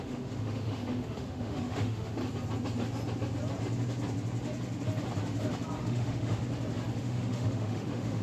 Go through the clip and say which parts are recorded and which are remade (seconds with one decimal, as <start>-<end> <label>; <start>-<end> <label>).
0.0-2.2 remade; 2.2-5.8 recorded; 5.8-6.4 remade; 6.4-7.0 recorded; 7.0-8.2 remade